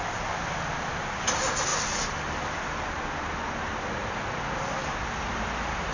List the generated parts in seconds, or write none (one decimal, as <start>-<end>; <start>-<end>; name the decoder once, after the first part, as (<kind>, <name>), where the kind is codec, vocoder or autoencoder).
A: none